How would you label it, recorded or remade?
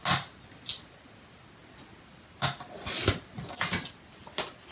recorded